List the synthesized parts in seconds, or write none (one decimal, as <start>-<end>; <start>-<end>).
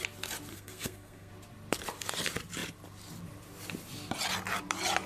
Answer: 0.5-1.3